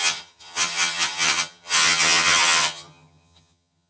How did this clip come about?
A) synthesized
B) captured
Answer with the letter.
A